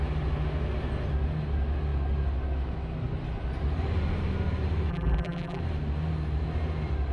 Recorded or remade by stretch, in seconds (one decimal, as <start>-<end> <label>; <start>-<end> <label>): 0.0-4.9 recorded; 4.9-5.6 remade; 5.6-7.1 recorded